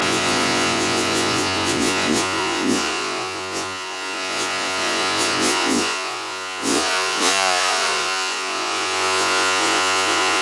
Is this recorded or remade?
remade